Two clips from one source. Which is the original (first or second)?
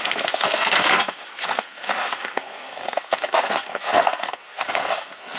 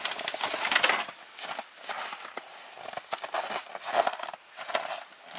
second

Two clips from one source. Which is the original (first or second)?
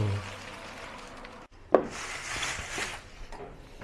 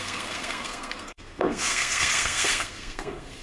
first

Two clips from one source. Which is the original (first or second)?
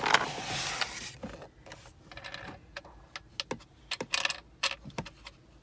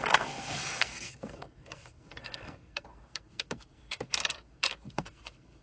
first